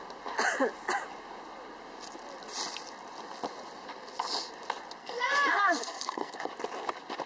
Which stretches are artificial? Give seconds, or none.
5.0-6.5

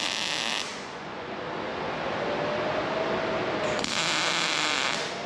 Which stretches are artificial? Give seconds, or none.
0.7-1.4

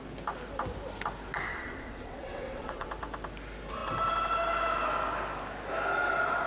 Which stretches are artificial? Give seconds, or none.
1.5-2.9

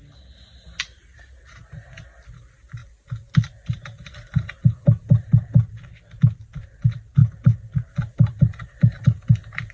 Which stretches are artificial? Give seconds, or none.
none

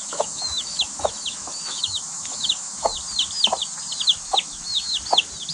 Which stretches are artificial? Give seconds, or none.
0.0-2.9; 4.2-4.7

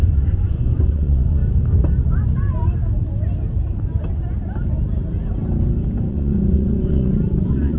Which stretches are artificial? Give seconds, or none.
0.0-1.4; 6.1-7.8

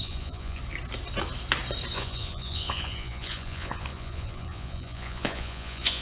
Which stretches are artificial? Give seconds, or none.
0.0-0.6; 1.9-6.0

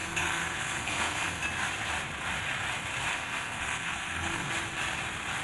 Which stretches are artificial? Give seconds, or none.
0.0-1.4; 3.1-4.5